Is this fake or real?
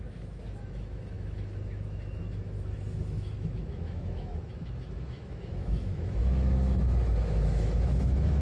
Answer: fake